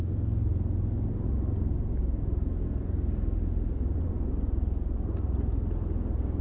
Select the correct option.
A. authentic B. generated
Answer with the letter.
A